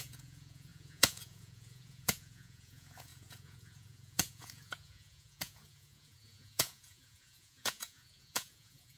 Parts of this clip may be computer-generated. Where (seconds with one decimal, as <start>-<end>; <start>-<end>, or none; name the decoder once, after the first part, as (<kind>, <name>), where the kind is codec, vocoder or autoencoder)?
0.0-9.0 (vocoder, Vocos)